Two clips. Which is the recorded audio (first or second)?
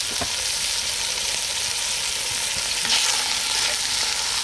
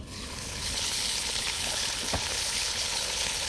first